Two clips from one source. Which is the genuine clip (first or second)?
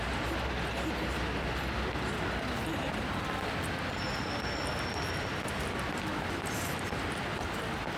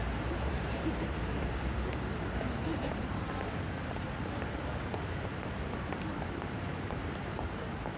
first